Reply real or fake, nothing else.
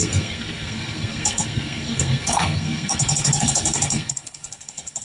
fake